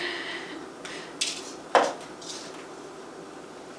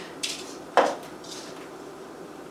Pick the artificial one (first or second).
second